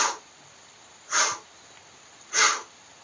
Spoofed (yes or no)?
no